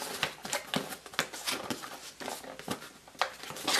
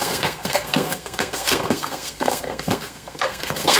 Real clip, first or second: first